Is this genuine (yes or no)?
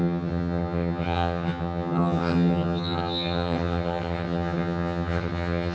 no